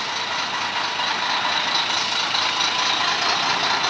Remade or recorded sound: recorded